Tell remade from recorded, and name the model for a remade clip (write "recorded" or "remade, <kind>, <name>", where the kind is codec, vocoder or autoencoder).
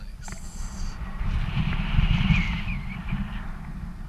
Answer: recorded